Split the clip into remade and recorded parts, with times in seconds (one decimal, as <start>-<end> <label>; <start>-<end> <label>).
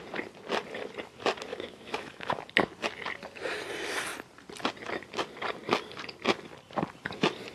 0.0-1.5 recorded; 1.5-2.4 remade; 2.4-7.5 recorded